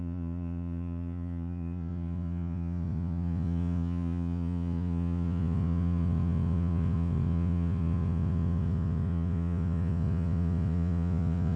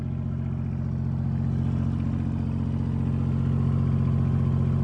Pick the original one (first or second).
second